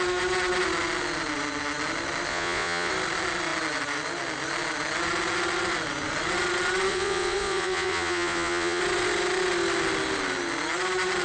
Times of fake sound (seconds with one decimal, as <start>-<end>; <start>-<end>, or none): 2.3-2.9; 6.9-8.8